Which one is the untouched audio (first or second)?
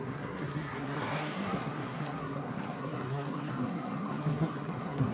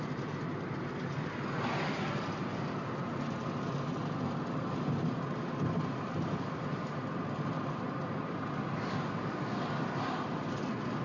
second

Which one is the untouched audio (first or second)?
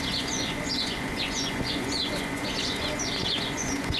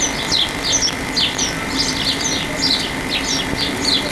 second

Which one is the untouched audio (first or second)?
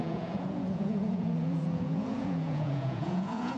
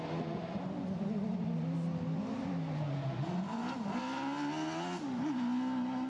second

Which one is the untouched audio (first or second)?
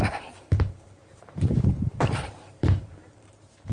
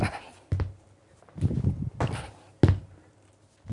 second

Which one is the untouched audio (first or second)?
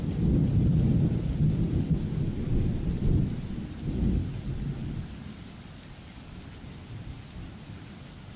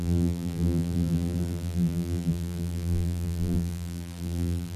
first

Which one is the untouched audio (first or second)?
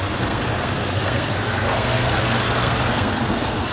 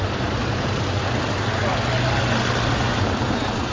second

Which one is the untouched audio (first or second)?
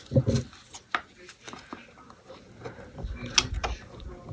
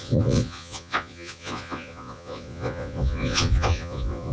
first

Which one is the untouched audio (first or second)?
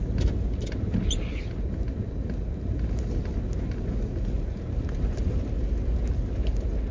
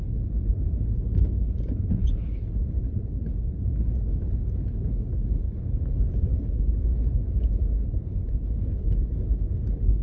first